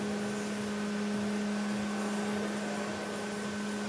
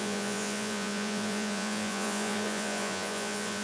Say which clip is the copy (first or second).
second